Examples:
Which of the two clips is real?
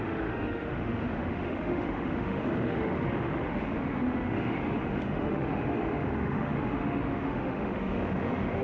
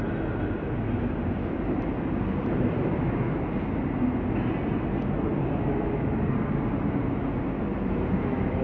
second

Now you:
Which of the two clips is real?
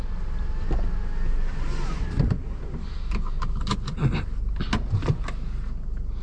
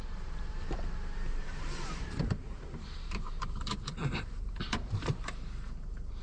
first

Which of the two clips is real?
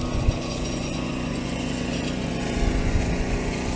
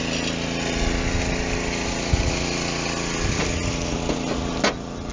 second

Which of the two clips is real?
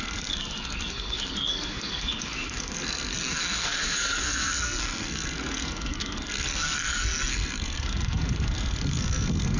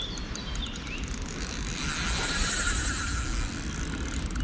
second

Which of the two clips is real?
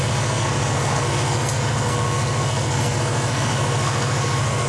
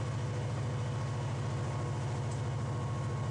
second